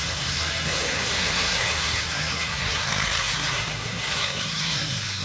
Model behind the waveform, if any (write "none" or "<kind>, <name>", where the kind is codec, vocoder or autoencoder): codec, SNAC